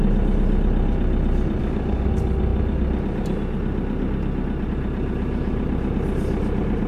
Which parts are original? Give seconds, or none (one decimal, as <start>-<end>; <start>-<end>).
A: 0.0-1.6; 2.1-6.9